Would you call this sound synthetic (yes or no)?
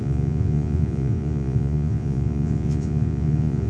yes